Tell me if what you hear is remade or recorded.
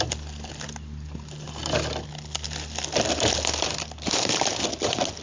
recorded